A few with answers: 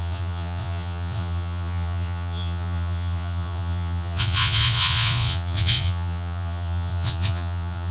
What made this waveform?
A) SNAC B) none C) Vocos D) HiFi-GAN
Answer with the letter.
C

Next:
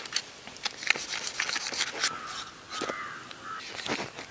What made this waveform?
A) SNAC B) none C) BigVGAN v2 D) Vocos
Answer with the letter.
B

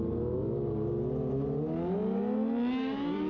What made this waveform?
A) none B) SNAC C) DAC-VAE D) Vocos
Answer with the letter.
A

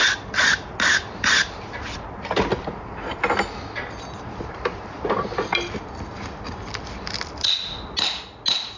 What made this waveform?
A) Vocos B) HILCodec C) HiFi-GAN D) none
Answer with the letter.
D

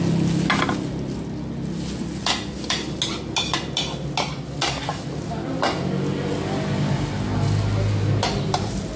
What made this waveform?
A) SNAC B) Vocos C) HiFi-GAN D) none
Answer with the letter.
D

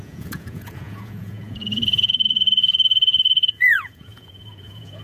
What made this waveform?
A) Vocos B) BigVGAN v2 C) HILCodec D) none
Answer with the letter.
A